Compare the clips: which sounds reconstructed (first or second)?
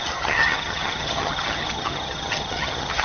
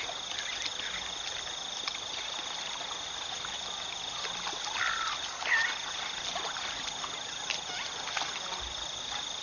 first